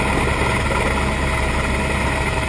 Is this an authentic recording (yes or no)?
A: yes